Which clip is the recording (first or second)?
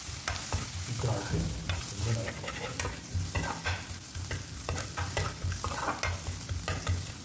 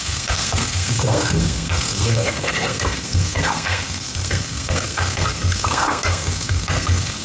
first